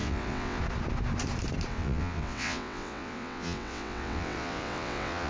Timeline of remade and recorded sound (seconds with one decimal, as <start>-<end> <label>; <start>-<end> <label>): 0.0-0.6 remade; 0.6-1.7 recorded; 1.7-5.3 remade